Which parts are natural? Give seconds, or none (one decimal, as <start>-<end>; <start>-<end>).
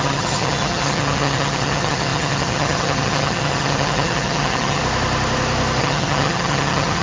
4.8-5.8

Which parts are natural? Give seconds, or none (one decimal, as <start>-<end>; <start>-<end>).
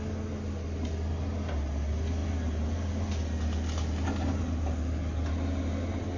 0.0-6.2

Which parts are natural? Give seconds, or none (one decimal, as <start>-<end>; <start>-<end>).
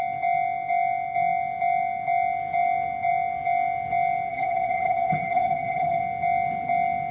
0.0-4.3; 6.0-7.1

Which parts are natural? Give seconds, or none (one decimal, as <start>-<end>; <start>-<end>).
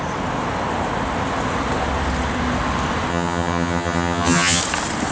0.0-3.1; 4.6-5.1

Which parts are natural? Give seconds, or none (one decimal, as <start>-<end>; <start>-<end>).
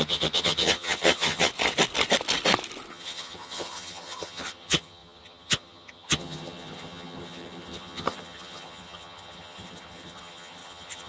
1.5-2.9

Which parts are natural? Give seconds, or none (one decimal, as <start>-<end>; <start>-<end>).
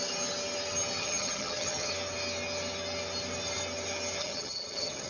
0.0-1.0; 1.9-4.2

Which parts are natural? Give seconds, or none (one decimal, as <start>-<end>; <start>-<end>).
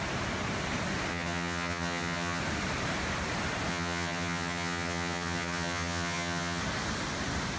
0.0-1.1; 2.4-3.7; 6.6-7.6